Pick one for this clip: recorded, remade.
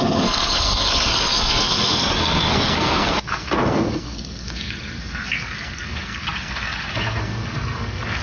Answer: remade